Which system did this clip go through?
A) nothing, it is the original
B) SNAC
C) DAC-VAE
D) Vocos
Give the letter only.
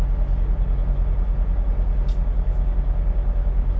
A